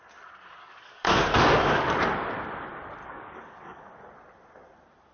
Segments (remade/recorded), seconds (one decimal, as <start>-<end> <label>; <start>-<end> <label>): 0.0-0.6 recorded; 0.6-1.9 remade; 1.9-3.0 recorded; 3.0-3.9 remade; 3.9-5.1 recorded